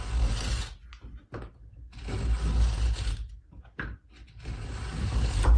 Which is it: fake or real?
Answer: real